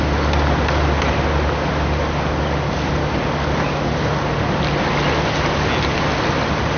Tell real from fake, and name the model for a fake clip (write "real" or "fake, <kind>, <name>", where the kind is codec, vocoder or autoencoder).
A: real